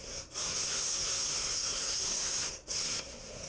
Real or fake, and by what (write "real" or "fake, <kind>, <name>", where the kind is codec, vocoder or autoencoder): fake, codec, SNAC